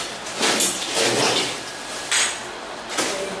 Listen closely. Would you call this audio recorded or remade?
recorded